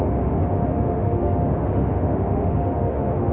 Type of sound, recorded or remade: remade